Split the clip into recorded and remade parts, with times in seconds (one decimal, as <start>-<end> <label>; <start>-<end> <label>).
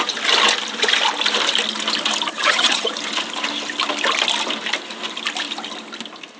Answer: 0.0-2.3 recorded; 2.3-2.9 remade; 2.9-6.4 recorded